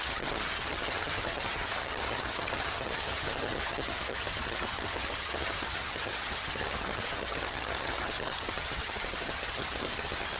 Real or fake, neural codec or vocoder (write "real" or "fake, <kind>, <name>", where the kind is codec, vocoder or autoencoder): fake, vocoder, HiFi-GAN